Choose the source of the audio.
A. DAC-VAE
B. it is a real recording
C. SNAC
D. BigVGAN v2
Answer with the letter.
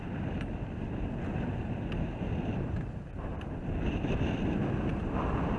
B